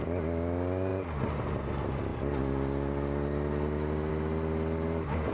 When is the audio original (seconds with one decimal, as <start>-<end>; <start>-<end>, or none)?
0.0-5.3